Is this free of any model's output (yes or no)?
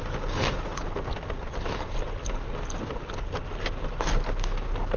yes